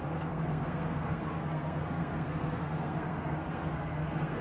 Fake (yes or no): yes